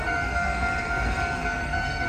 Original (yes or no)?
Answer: no